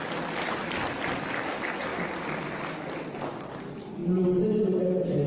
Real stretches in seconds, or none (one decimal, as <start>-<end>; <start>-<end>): none